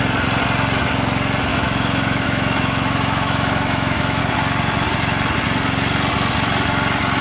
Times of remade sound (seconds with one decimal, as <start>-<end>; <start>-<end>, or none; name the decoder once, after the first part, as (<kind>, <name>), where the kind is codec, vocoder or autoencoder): 1.5-4.2 (autoencoder, DAC-VAE)